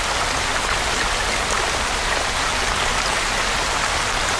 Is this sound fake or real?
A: real